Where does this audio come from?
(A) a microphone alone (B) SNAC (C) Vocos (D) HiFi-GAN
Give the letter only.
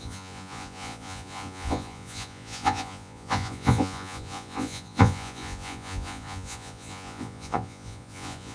C